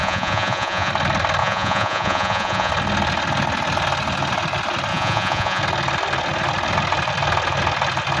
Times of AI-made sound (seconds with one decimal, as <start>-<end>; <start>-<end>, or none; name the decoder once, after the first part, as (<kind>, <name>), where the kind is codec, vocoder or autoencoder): 0.0-0.9 (vocoder, Vocos); 1.4-2.7; 4.9-5.6